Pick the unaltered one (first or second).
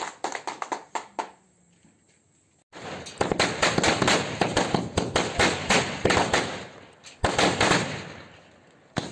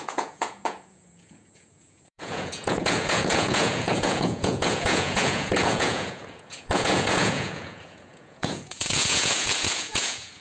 first